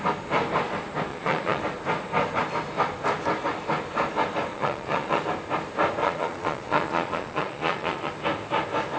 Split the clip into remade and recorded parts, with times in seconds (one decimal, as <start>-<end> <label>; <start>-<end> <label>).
0.0-1.1 recorded; 1.1-1.6 remade; 1.6-4.5 recorded; 4.5-5.2 remade; 5.2-6.0 recorded; 6.0-8.1 remade; 8.1-9.0 recorded